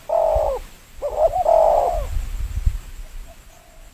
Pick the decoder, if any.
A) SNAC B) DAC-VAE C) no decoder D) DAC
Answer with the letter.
C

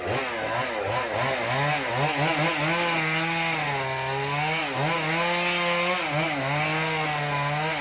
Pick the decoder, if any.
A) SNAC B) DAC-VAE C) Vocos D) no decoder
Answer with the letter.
D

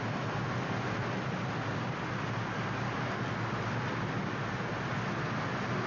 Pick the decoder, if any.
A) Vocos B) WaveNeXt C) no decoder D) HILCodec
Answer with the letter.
C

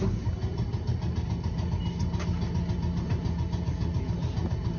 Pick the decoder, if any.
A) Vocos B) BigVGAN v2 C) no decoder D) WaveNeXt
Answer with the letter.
C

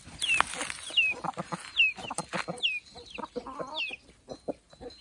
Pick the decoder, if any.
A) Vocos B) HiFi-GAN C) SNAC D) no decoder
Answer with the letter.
D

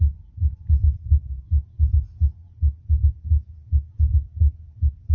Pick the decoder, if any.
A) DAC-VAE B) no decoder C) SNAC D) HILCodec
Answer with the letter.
B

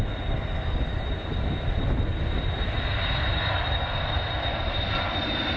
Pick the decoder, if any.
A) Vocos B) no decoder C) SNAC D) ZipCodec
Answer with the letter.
B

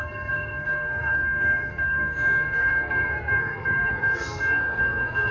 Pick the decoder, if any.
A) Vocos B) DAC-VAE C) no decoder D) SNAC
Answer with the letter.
D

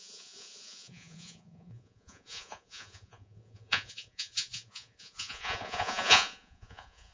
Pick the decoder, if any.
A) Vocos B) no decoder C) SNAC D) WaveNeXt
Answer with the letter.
A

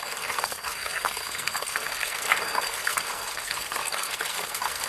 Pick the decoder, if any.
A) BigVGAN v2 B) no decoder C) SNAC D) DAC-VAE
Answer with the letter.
C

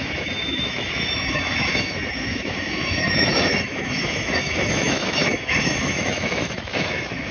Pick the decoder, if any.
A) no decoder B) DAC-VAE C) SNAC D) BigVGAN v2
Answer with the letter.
B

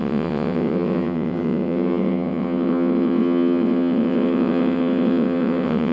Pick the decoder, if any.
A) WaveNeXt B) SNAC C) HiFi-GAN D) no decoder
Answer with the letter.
A